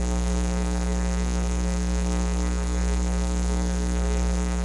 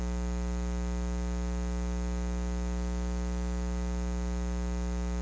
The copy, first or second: first